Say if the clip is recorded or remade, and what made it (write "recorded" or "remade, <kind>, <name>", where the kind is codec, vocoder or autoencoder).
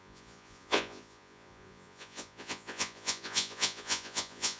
remade, vocoder, Vocos